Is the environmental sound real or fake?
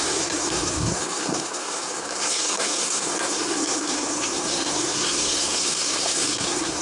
fake